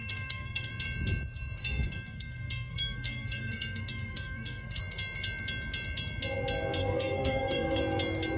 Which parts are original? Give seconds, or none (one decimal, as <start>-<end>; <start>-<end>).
0.7-1.6; 4.8-6.8; 7.8-8.4